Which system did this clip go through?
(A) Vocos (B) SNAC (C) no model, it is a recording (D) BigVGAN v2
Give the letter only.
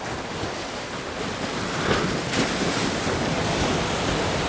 C